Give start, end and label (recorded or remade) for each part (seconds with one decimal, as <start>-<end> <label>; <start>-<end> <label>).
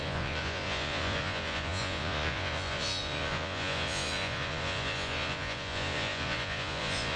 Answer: 0.0-7.2 remade